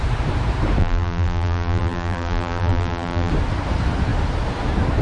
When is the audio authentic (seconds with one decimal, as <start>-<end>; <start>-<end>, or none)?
0.0-0.8; 3.3-5.0